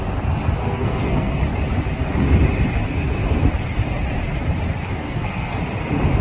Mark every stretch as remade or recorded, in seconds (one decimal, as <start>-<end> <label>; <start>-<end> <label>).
0.0-0.6 recorded; 0.6-1.3 remade; 1.3-5.0 recorded; 5.0-5.6 remade; 5.6-6.2 recorded